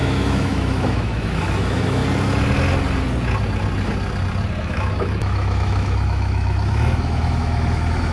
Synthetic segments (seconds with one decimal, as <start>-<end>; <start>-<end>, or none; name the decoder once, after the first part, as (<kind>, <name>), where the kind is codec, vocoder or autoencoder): 0.0-2.0 (autoencoder, DAC-VAE); 4.6-8.1